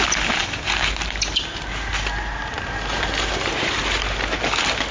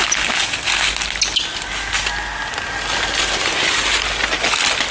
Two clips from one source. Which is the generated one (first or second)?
first